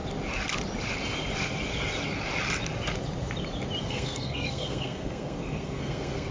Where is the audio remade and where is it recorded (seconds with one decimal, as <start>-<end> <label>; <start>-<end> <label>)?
0.0-3.8 recorded; 3.8-6.3 remade